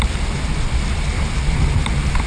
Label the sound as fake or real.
real